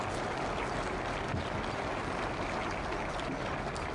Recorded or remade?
recorded